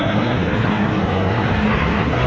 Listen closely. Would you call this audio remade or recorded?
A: remade